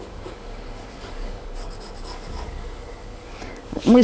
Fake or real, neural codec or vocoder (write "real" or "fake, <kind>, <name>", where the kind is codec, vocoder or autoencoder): fake, codec, DAC